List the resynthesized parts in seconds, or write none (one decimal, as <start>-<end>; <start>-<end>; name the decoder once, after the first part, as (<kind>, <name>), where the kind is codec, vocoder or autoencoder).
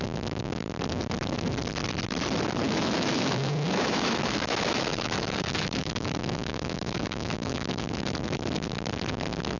2.6-7.9 (autoencoder, DAC-VAE)